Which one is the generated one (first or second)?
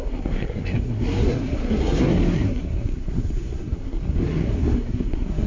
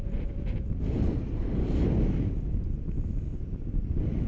first